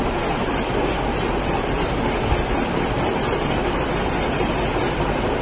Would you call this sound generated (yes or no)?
yes